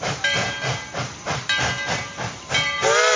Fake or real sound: real